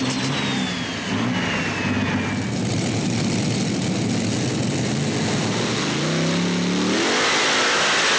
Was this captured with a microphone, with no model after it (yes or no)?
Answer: yes